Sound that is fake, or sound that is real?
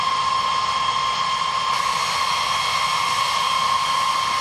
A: real